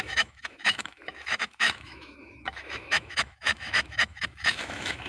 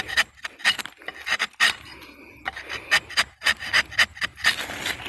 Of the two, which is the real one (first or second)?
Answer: second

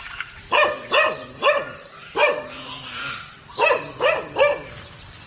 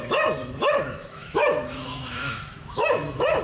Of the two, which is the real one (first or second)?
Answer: first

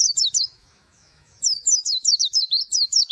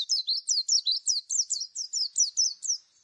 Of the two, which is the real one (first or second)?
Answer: second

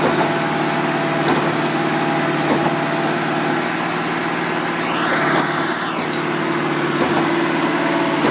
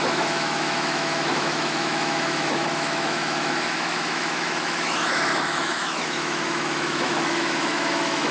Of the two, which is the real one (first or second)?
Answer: first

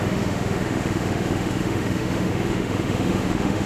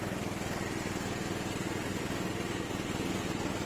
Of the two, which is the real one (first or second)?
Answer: second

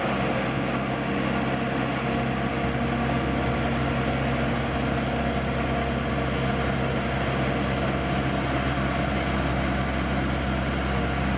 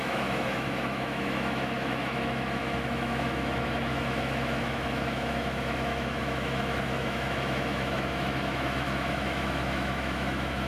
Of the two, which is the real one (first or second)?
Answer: first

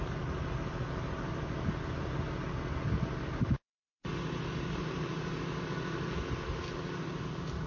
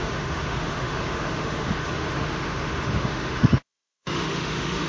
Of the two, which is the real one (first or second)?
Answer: first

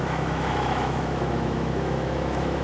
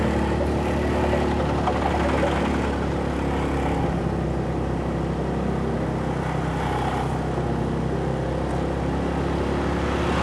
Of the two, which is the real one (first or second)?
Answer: second